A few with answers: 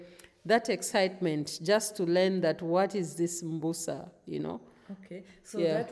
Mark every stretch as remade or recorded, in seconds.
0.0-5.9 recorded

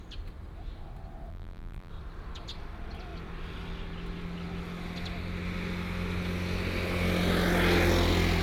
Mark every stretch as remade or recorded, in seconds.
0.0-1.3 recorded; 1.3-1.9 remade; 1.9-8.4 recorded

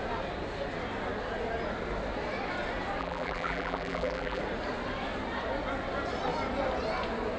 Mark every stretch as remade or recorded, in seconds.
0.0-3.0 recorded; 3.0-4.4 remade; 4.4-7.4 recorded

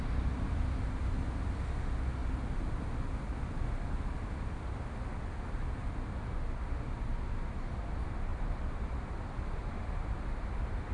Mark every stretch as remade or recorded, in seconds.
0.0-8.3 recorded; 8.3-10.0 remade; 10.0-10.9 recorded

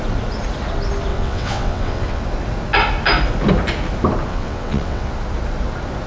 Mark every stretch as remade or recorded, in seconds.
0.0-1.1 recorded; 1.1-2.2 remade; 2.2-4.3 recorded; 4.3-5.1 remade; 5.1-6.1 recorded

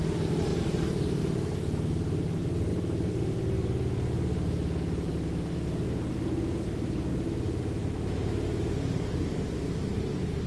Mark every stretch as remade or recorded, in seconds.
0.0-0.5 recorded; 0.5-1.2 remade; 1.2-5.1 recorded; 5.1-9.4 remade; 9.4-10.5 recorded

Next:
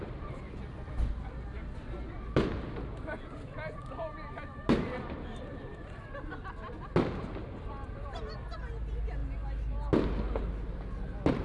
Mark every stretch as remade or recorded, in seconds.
0.0-11.4 recorded

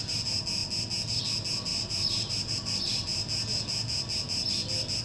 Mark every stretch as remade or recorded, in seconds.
0.0-1.7 recorded; 1.7-3.2 remade; 3.2-5.0 recorded